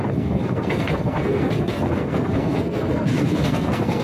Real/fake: fake